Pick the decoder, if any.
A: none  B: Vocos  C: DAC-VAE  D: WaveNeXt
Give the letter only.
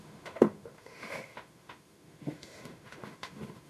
C